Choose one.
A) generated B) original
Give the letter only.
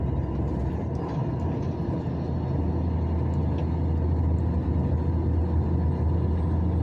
B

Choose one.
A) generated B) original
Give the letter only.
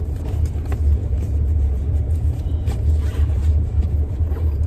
A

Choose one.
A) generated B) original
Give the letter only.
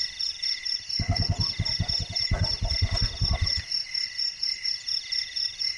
B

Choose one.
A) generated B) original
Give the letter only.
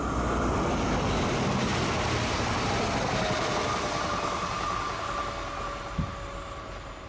B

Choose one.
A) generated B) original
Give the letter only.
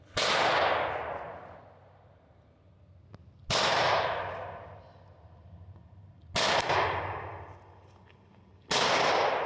B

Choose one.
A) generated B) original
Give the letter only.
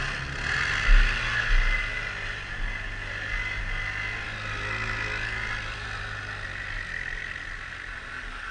B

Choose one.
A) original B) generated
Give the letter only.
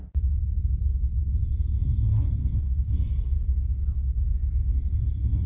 A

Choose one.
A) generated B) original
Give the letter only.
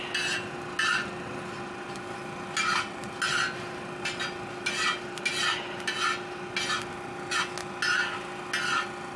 B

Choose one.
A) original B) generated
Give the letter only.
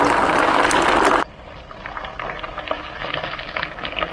A